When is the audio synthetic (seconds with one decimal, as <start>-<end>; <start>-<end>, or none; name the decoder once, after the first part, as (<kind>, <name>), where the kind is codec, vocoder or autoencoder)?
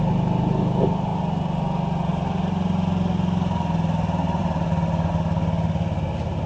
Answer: none